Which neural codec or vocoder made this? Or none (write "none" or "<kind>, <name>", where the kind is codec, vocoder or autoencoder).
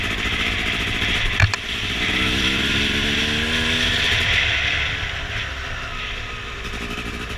none